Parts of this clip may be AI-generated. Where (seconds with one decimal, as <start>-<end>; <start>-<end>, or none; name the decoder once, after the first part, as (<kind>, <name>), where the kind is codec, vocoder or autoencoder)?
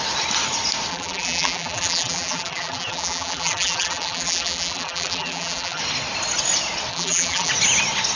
0.9-5.8 (vocoder, BigVGAN v2); 6.9-7.5